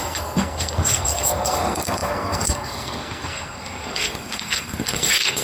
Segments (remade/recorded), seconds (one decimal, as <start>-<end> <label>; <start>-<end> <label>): 0.0-5.4 remade